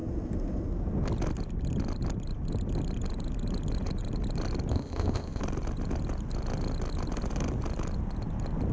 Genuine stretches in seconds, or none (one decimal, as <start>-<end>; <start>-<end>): 0.0-4.7; 5.4-8.7